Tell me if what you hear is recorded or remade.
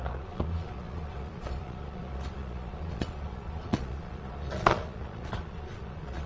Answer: remade